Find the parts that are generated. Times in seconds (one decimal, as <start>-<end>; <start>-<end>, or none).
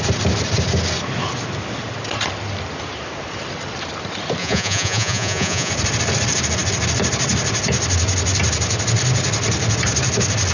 4.4-5.7